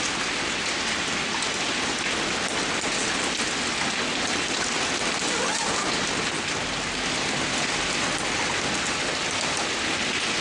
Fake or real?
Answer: real